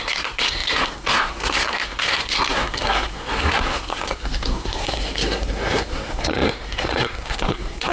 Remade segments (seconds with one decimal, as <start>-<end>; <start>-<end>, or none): 0.0-7.9